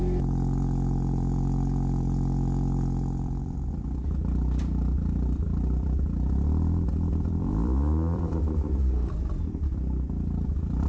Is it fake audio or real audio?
fake